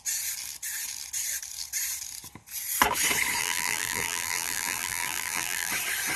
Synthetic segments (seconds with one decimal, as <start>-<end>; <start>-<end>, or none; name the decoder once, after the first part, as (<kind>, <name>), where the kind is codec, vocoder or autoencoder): 3.4-5.7 (vocoder, BigVGAN v2)